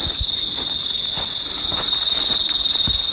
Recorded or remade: recorded